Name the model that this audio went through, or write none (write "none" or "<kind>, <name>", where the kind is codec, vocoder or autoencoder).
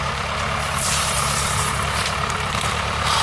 vocoder, BigVGAN v2